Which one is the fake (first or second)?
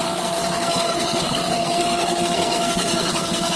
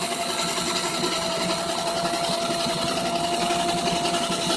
first